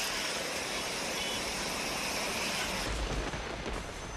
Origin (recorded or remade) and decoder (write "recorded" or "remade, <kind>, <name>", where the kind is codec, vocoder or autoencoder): recorded